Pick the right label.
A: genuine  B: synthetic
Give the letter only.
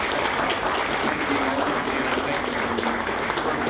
A